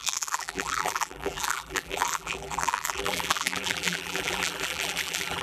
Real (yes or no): no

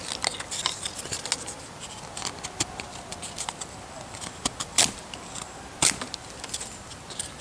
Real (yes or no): yes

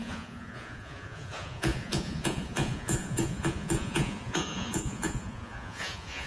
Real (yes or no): no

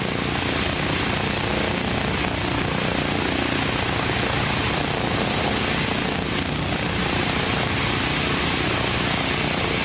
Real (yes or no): yes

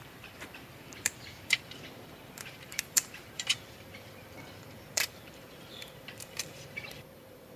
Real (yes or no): no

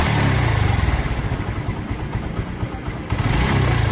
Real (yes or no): yes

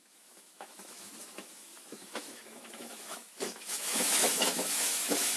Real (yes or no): no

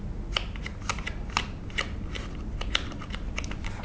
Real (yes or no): yes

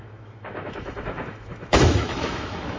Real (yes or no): no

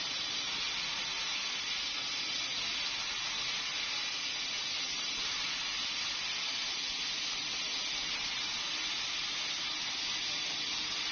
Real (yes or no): yes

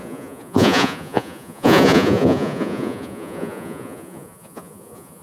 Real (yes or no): no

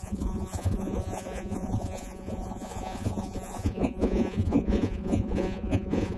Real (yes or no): no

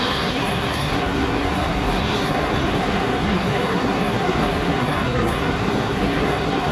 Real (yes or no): no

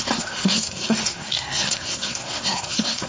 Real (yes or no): no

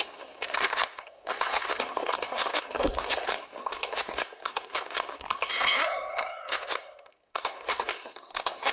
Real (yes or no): no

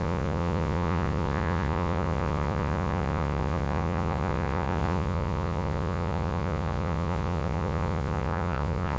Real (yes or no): no